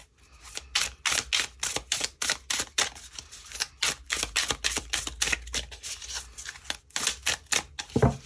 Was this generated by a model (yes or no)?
no